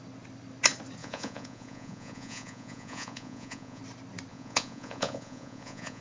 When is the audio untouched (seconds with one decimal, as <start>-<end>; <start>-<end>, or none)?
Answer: 0.0-1.0; 3.8-4.3